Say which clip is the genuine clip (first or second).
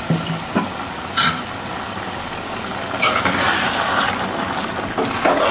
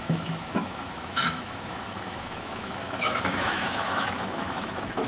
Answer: first